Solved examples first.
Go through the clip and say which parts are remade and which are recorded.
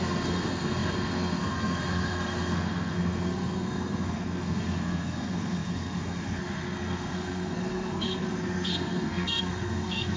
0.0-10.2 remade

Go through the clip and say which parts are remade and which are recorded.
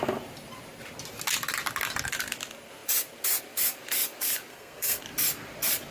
0.0-4.5 recorded; 4.5-5.0 remade; 5.0-5.9 recorded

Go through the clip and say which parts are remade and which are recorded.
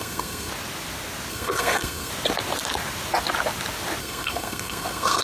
0.0-0.5 remade; 0.5-1.3 recorded; 1.3-2.1 remade; 2.1-4.0 recorded; 4.0-5.2 remade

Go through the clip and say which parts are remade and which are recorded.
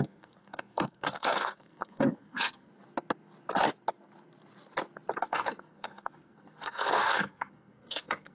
0.0-2.7 remade; 2.7-5.2 recorded; 5.2-8.3 remade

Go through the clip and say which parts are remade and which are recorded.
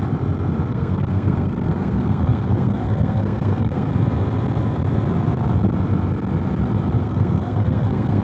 0.0-0.7 recorded; 0.7-3.9 remade; 3.9-7.0 recorded; 7.0-8.2 remade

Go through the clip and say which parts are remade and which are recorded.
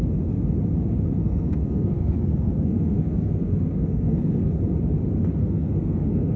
0.0-1.2 recorded; 1.2-4.5 remade; 4.5-5.4 recorded; 5.4-6.4 remade